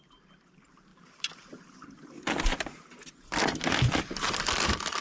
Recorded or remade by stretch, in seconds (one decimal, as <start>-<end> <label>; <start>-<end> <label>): 0.0-0.9 recorded; 0.9-1.5 remade; 1.5-5.0 recorded